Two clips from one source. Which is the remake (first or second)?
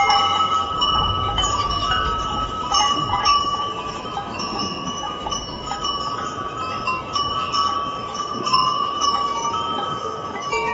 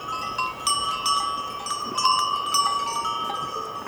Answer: first